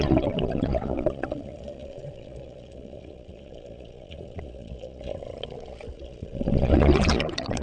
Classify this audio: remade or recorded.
remade